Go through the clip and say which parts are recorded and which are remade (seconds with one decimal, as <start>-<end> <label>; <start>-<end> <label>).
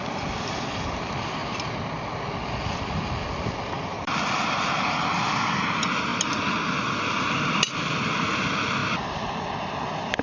0.0-1.4 remade; 1.4-3.9 recorded; 3.9-6.1 remade; 6.1-6.7 recorded; 6.7-8.8 remade; 8.8-9.6 recorded; 9.6-10.2 remade